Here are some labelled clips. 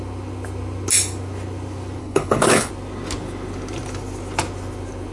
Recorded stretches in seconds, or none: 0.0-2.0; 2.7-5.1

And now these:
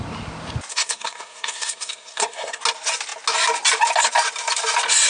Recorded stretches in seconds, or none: 0.0-0.7; 2.6-5.1

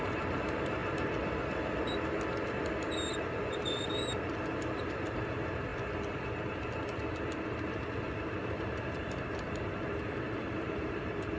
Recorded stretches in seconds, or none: 0.8-3.6; 5.7-8.0

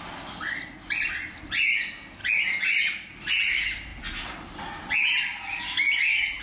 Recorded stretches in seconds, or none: 0.0-6.4

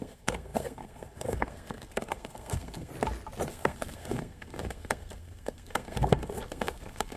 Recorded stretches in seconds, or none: 2.9-3.5